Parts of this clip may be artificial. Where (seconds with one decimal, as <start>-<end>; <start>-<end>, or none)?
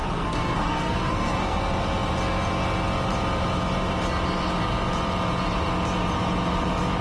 0.0-1.6